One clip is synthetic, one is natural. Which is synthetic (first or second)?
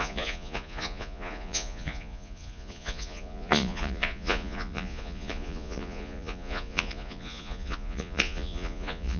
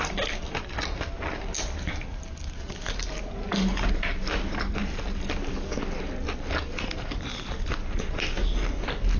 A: first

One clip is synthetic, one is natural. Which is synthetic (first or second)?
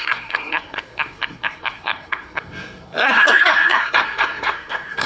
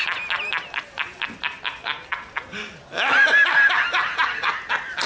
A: first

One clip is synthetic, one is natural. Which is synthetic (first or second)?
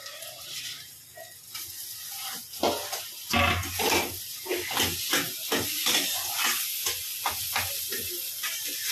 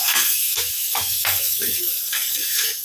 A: second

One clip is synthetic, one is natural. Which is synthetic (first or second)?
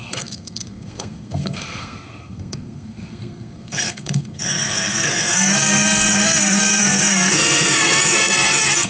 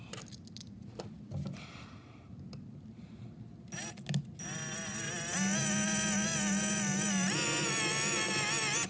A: first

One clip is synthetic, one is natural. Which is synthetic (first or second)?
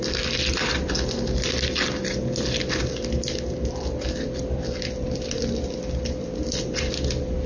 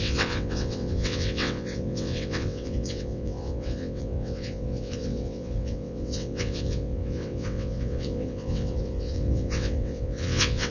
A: second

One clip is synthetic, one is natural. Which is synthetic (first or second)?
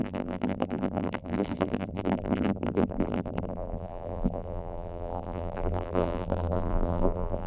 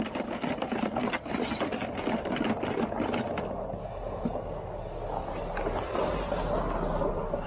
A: first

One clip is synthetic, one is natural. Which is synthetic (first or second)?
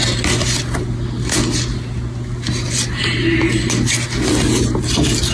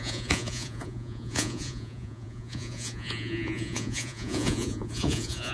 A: second